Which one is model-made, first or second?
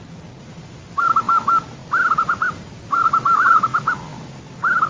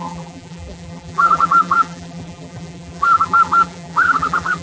second